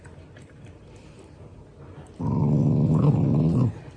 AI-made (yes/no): no